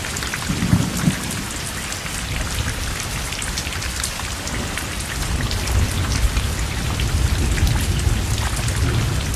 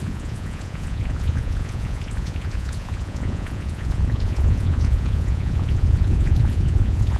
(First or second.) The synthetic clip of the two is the second